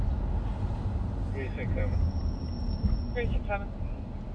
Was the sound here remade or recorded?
recorded